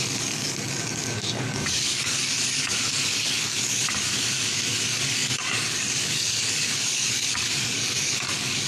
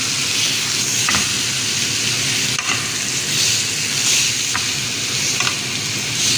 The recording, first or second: second